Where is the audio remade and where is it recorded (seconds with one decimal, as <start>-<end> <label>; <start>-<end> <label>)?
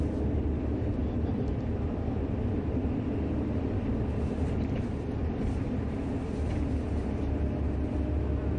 0.0-1.0 recorded; 1.0-5.8 remade; 5.8-8.6 recorded